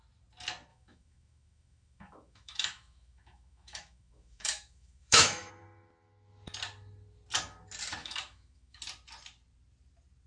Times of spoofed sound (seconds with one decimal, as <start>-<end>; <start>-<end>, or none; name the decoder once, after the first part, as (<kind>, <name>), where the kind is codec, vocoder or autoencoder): 0.7-5.5 (autoencoder, DAC-VAE); 8.0-8.8